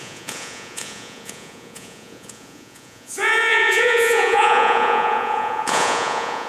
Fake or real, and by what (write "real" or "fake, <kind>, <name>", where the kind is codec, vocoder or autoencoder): fake, vocoder, Vocos